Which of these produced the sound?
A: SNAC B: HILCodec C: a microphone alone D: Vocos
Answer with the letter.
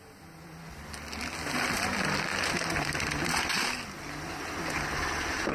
C